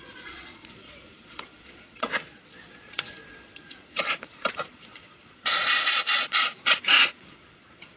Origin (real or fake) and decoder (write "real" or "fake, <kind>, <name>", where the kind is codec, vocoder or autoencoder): fake, vocoder, Vocos